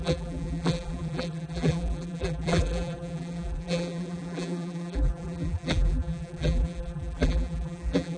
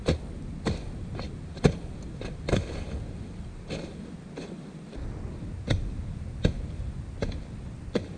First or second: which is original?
second